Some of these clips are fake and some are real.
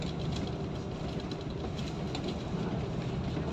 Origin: real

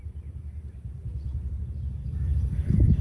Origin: fake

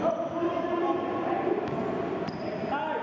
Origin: real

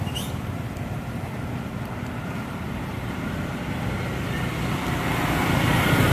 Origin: fake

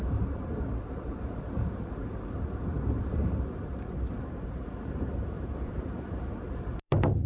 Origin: fake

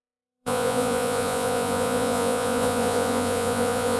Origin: fake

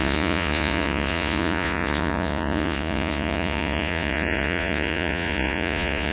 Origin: fake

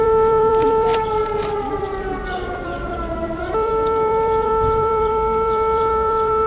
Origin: fake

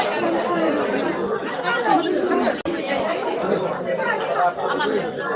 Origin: real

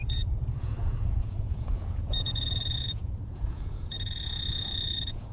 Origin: fake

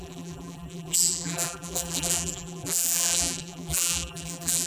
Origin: fake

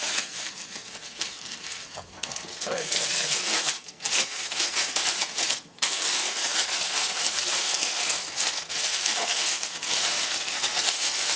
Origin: fake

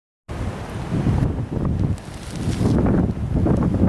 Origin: real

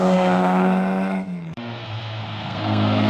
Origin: fake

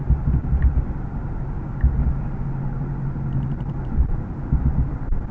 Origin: real